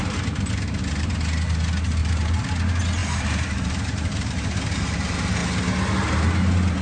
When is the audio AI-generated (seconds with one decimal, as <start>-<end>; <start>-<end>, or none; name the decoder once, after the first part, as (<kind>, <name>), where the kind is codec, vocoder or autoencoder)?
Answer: 0.0-1.1 (vocoder, BigVGAN v2); 2.0-2.5; 3.0-4.4